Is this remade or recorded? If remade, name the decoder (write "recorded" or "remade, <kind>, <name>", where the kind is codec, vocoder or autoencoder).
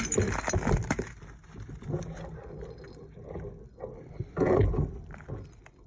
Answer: recorded